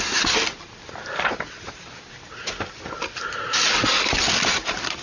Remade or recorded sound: recorded